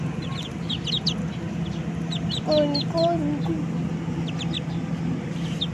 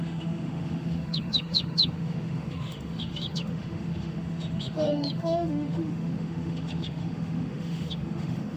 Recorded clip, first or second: first